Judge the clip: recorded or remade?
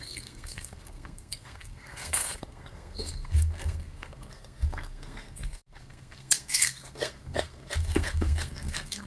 remade